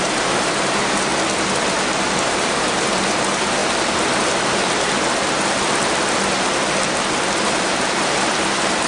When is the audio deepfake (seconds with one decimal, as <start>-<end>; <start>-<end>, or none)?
0.0-1.1; 2.0-3.6; 7.4-8.9